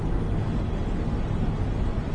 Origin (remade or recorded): recorded